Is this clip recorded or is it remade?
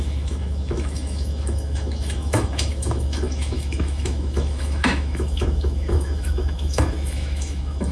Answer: remade